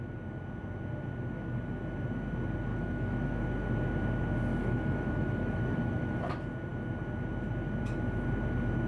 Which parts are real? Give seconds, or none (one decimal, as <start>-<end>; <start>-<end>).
0.0-2.7; 3.4-4.5; 6.3-8.9